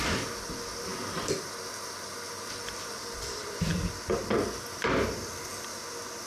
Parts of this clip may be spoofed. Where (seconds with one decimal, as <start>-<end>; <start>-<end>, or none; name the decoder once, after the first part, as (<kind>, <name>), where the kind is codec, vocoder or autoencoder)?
0.0-3.7 (vocoder, BigVGAN v2); 4.8-5.5